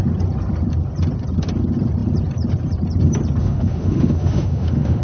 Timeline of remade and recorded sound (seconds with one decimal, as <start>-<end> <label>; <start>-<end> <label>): 0.0-3.4 recorded; 3.4-5.0 remade